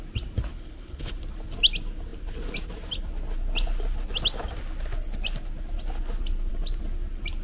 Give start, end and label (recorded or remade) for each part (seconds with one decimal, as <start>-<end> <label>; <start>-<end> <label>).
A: 0.0-0.5 recorded; 0.5-1.1 remade; 1.1-7.4 recorded